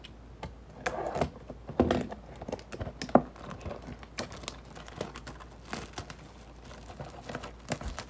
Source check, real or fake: real